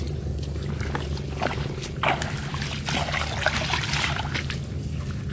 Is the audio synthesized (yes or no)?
no